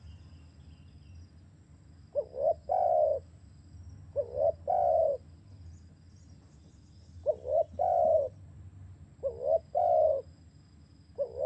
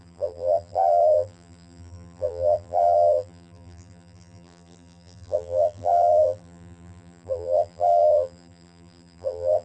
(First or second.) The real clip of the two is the first